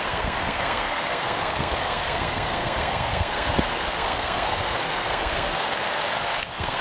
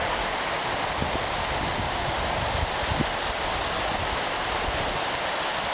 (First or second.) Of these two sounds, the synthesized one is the first